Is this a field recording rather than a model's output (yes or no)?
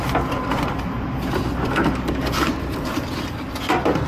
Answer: yes